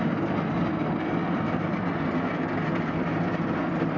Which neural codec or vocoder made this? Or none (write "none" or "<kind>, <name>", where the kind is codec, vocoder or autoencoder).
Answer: none